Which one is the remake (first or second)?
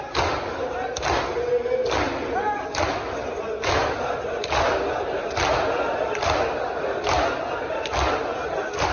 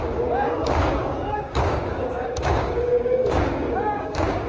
second